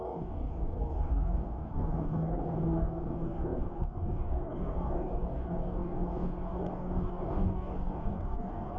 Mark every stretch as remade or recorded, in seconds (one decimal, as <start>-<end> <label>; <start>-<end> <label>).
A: 0.0-8.8 remade